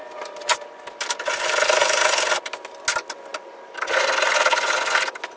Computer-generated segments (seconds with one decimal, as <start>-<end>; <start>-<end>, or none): none